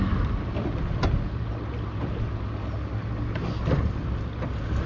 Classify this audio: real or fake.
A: real